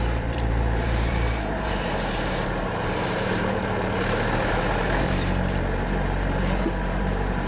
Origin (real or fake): fake